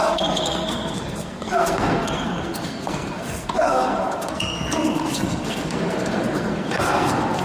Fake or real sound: fake